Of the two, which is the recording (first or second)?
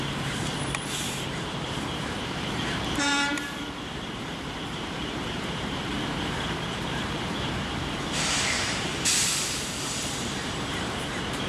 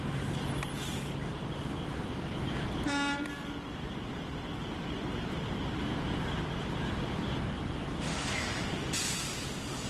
second